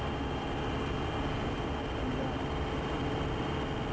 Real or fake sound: real